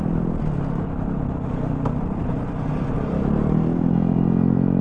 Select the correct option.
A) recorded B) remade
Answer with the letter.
B